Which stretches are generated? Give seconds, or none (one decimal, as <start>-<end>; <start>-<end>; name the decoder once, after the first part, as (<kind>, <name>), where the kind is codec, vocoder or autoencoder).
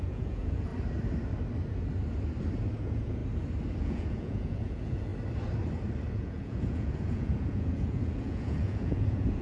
0.0-0.7 (vocoder, Vocos); 2.8-3.2; 3.8-5.1; 6.1-9.4